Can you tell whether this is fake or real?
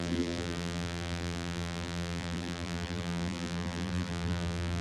fake